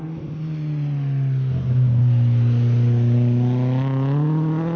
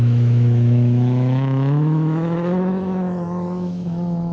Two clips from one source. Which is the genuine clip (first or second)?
first